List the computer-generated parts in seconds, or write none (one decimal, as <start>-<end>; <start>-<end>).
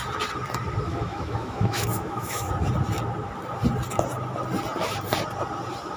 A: 0.9-2.5